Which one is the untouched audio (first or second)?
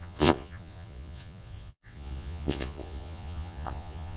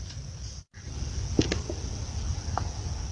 second